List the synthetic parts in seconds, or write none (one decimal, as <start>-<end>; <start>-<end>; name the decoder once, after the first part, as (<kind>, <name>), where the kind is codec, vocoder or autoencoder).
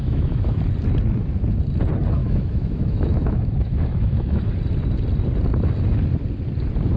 0.0-0.6 (autoencoder, DAC-VAE); 2.2-4.5